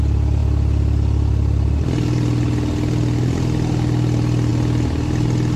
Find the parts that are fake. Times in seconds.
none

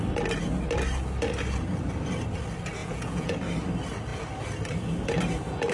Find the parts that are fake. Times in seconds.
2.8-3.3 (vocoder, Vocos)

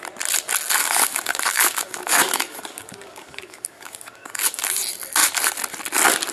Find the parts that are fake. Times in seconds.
0.8-4.6 (codec, DAC)

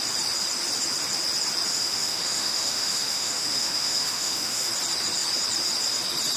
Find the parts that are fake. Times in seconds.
1.7-4.7 (autoencoder, DAC-VAE)

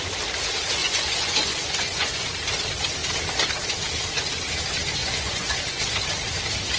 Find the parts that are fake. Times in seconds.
0.8-2.3 (vocoder, Vocos); 5.0-5.9

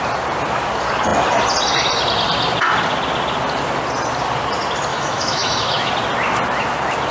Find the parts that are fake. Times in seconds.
4.9-5.9 (autoencoder, DAC-VAE)

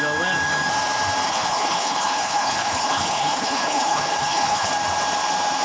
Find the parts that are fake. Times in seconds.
1.3-4.7 (codec, HILCodec)

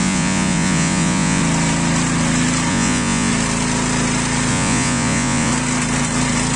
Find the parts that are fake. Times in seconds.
0.0-1.4 (vocoder, Vocos); 2.7-3.3; 4.5-5.5